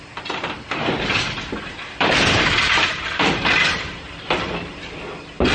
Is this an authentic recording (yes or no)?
no